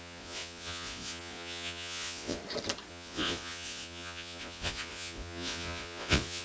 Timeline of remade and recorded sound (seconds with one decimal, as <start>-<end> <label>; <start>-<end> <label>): 0.0-2.4 remade; 2.4-2.9 recorded; 2.9-6.4 remade